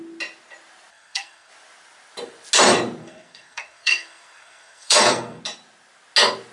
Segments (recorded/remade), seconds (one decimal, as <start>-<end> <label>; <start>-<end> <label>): 0.0-0.9 recorded; 0.9-1.5 remade; 1.5-3.0 recorded; 3.0-5.4 remade; 5.4-6.5 recorded